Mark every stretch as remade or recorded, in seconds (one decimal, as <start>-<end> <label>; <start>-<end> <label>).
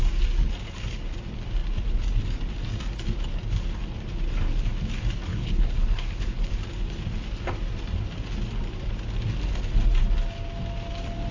0.0-5.3 recorded; 5.3-6.5 remade; 6.5-11.3 recorded